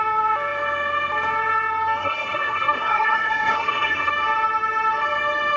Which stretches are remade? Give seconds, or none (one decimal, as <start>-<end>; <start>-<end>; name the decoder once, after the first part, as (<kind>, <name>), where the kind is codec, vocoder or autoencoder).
2.0-4.1 (codec, SNAC)